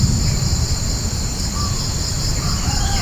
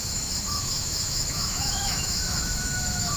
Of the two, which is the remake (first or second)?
second